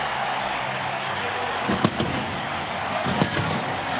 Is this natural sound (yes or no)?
no